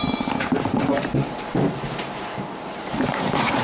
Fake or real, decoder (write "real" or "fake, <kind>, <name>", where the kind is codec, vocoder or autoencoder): fake, vocoder, BigVGAN v2